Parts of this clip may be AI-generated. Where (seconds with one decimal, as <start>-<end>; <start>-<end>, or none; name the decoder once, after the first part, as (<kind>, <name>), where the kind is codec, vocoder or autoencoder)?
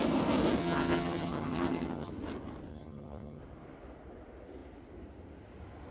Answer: 0.6-2.1 (vocoder, HiFi-GAN); 2.7-3.4